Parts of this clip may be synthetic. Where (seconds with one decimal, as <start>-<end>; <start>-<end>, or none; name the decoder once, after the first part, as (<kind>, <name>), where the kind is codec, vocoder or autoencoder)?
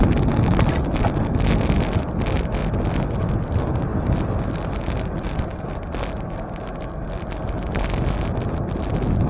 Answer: none